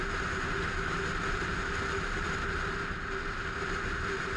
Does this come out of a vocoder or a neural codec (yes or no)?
no